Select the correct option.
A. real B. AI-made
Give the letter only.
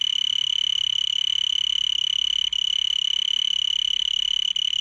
A